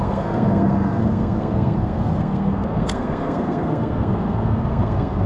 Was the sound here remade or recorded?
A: remade